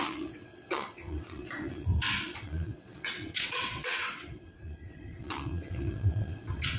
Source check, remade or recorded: remade